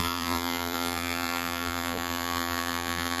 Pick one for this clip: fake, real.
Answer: fake